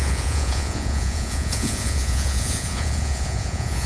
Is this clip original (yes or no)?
no